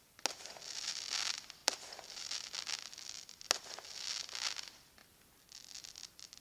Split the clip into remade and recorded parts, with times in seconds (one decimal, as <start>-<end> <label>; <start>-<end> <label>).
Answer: 0.0-6.4 recorded